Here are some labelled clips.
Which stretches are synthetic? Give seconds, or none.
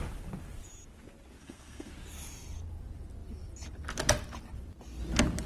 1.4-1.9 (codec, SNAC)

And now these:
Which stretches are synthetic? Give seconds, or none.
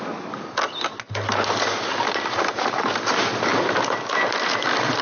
none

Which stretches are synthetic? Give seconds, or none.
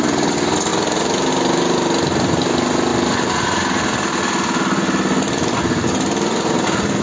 none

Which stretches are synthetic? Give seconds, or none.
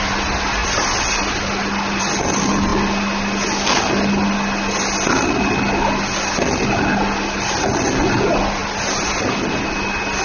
none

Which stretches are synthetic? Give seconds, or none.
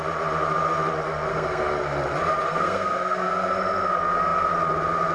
1.3-1.8 (codec, SNAC); 2.5-3.3